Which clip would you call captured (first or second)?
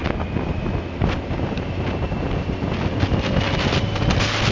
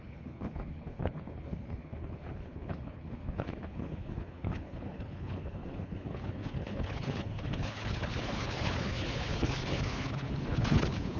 first